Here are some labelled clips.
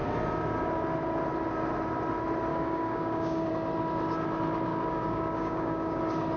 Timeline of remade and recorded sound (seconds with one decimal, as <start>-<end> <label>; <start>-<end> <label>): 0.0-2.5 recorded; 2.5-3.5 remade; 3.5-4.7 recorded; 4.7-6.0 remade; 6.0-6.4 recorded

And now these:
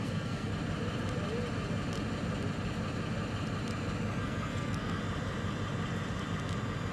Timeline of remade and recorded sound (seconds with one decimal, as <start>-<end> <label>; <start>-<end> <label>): 0.0-0.5 remade; 0.5-4.2 recorded; 4.2-5.0 remade; 5.0-6.9 recorded

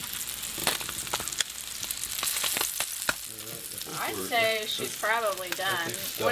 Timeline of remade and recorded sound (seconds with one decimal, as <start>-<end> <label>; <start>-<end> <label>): 0.0-3.9 recorded; 3.9-5.0 remade; 5.0-6.3 recorded

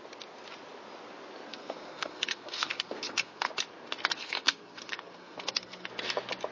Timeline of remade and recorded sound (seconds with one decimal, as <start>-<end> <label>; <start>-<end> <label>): 0.0-1.5 recorded; 1.5-3.5 remade; 3.5-4.2 recorded; 4.2-5.9 remade; 5.9-6.5 recorded